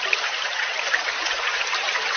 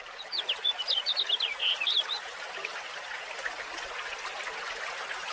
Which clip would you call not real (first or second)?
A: first